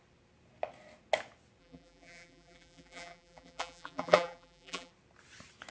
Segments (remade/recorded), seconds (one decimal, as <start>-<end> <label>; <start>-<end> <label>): 0.0-1.6 recorded; 1.6-4.9 remade; 4.9-5.7 recorded